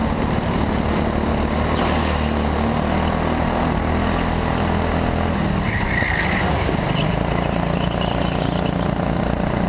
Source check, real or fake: real